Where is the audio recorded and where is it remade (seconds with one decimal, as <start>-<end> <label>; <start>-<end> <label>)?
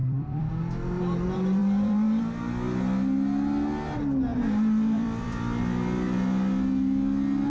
0.0-0.6 remade; 0.6-1.6 recorded; 1.6-2.2 remade; 2.2-4.3 recorded; 4.3-5.6 remade; 5.6-7.5 recorded